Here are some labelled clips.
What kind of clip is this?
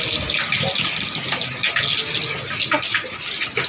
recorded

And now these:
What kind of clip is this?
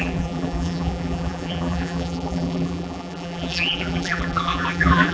remade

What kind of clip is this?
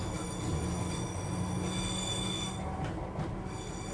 recorded